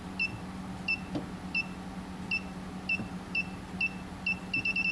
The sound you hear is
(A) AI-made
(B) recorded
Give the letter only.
B